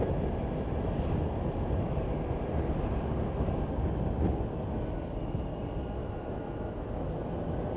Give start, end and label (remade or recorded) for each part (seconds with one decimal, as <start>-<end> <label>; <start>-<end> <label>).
0.0-6.0 recorded; 6.0-6.9 remade; 6.9-7.8 recorded